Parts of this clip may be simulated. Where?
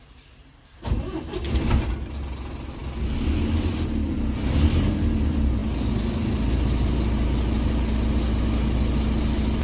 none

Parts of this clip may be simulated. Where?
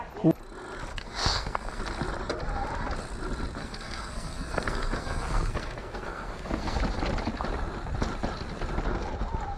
0.9-1.8 (codec, SNAC); 3.6-6.8